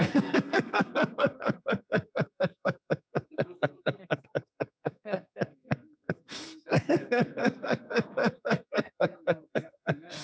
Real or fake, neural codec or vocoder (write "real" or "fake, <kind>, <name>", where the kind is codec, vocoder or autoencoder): fake, codec, SNAC